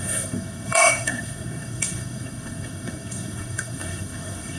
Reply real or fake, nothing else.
fake